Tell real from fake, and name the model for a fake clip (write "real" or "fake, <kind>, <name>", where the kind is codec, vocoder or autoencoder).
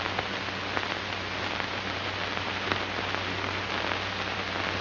real